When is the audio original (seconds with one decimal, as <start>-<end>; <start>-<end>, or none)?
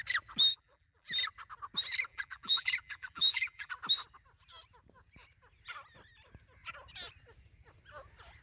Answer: 0.0-0.5; 1.1-2.1; 3.7-8.4